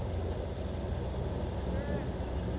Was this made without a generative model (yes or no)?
yes